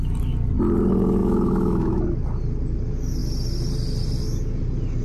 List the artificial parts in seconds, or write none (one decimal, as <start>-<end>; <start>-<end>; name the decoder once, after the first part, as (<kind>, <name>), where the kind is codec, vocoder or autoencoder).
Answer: 1.2-2.0 (autoencoder, DAC-VAE)